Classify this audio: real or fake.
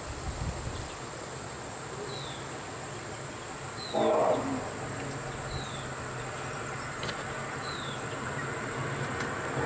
real